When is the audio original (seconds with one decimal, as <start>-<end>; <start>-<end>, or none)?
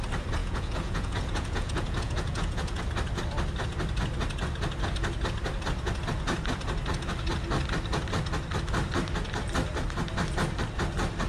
0.0-0.4; 2.8-11.3